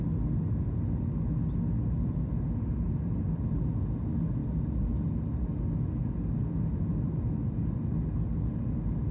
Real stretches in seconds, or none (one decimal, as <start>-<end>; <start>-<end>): 0.0-9.1